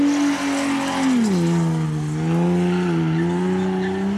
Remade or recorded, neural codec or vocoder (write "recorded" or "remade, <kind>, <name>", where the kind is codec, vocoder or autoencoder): recorded